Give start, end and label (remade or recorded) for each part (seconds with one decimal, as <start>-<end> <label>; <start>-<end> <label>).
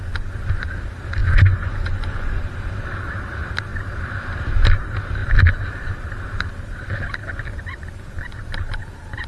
0.0-1.2 recorded; 1.2-2.4 remade; 2.4-9.3 recorded